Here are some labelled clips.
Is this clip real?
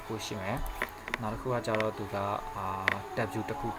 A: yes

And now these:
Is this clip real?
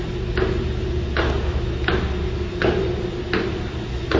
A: yes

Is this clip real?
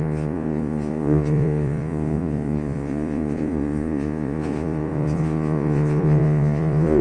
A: no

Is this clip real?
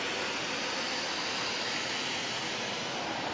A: yes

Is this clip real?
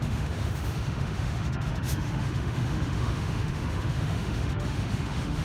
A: no